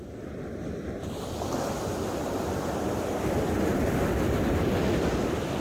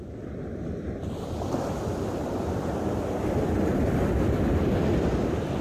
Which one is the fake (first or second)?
second